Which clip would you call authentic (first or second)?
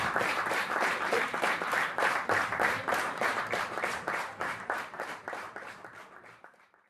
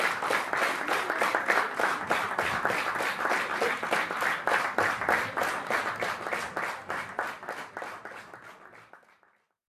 second